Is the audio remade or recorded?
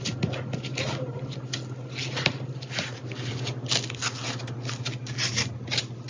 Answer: recorded